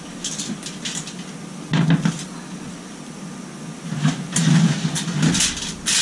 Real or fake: real